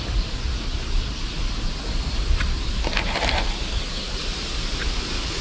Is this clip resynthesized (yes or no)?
no